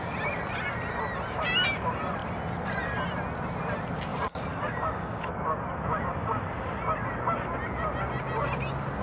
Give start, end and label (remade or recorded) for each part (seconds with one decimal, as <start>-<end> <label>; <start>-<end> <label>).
0.0-4.1 recorded; 4.1-4.9 remade; 4.9-6.2 recorded; 6.2-7.1 remade; 7.1-9.0 recorded